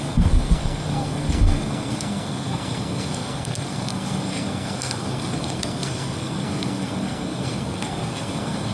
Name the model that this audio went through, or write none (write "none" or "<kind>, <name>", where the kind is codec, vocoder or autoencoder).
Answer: codec, SNAC